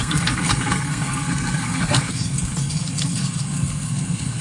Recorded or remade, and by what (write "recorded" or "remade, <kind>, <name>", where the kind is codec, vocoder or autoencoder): remade, codec, SNAC